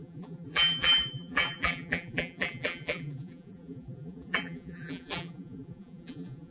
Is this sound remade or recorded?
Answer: remade